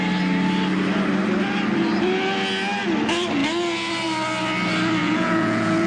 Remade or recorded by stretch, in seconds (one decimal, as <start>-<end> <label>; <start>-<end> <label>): 0.0-5.0 recorded; 5.0-5.9 remade